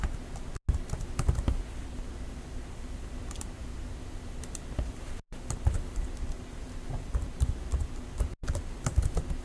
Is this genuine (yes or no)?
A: yes